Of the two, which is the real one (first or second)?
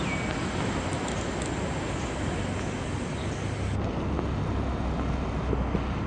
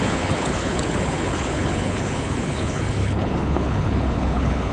first